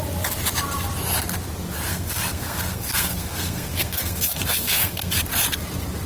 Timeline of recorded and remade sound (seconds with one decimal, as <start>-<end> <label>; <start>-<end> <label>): 0.0-1.9 recorded; 1.9-5.2 remade; 5.2-6.1 recorded